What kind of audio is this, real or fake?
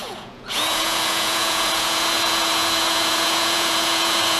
fake